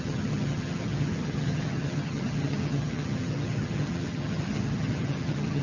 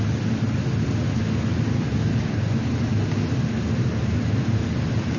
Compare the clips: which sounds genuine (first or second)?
second